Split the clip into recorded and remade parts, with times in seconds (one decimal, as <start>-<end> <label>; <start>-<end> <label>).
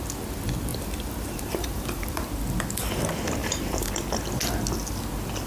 0.0-0.7 recorded; 0.7-2.3 remade; 2.3-3.4 recorded; 3.4-4.0 remade; 4.0-5.5 recorded